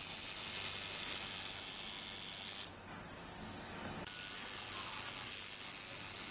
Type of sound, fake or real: real